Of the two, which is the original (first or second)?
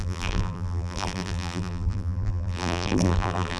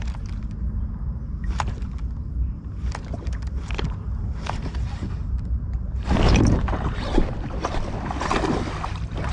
second